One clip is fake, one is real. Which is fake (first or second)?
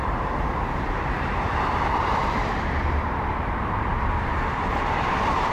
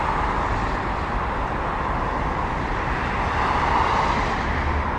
first